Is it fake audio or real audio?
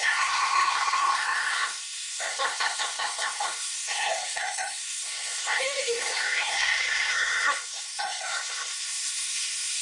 fake